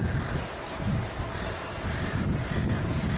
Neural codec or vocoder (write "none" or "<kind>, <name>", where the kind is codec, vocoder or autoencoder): none